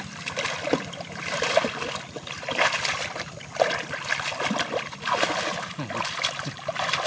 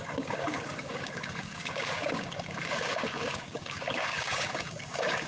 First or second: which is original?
first